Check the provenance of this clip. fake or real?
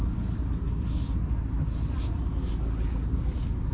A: real